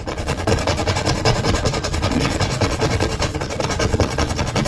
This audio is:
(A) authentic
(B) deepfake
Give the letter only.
B